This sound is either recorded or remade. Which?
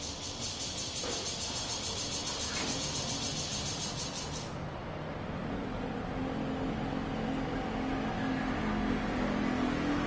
recorded